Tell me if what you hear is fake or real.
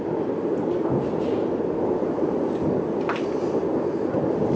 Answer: fake